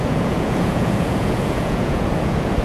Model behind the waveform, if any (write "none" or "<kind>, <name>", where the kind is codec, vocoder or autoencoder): vocoder, Vocos